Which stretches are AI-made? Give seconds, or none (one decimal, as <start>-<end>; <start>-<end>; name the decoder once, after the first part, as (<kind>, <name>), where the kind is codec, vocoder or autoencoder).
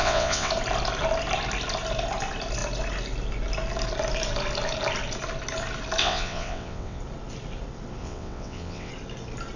0.0-0.5 (vocoder, WaveNeXt); 6.0-7.0; 8.0-8.9